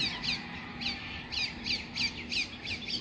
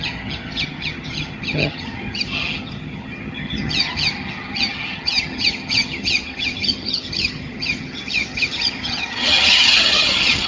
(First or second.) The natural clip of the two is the first